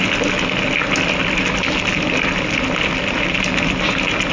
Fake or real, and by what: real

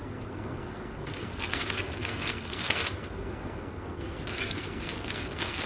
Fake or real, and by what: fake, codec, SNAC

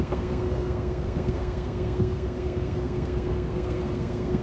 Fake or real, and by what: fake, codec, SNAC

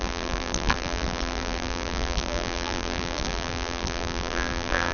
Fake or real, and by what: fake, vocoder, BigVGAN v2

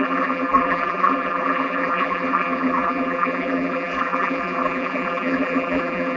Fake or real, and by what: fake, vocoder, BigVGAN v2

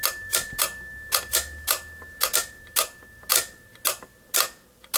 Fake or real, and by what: real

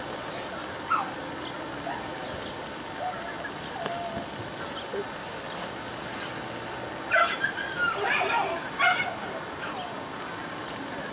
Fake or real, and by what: real